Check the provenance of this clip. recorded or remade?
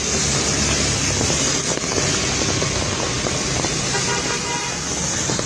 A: recorded